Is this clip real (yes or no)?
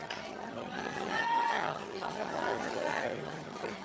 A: no